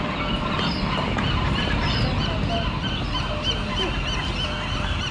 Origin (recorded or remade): recorded